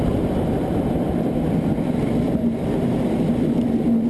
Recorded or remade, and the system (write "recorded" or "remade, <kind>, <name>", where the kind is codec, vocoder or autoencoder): recorded